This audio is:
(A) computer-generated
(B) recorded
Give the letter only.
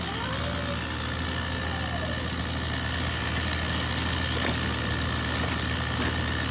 B